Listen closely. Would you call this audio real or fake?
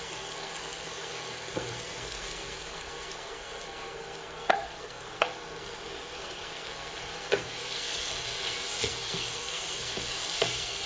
fake